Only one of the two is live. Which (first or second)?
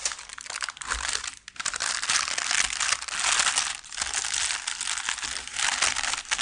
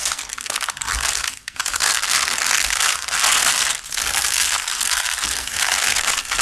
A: first